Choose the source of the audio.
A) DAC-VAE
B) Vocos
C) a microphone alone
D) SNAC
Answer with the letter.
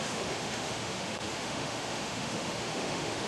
A